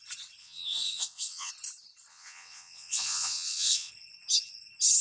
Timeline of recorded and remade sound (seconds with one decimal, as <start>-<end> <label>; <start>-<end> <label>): 0.0-0.4 recorded; 0.4-1.5 remade; 1.5-2.1 recorded; 2.1-3.9 remade; 3.9-5.0 recorded